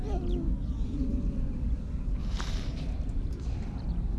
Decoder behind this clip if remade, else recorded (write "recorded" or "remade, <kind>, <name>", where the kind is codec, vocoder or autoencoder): recorded